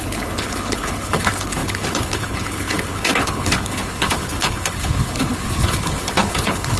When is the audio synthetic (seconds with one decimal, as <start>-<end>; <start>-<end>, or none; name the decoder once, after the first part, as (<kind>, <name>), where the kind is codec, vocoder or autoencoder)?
0.0-6.8 (codec, HILCodec)